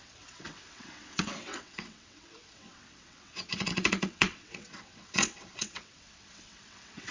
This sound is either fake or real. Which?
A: fake